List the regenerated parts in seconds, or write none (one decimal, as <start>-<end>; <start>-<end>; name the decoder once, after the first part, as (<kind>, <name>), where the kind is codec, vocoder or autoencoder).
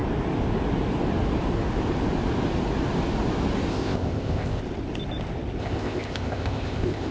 3.7-4.6 (codec, ZipCodec); 5.6-7.1